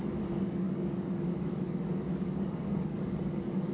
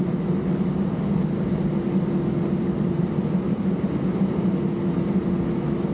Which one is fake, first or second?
first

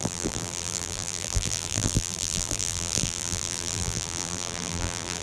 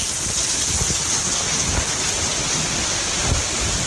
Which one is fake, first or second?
first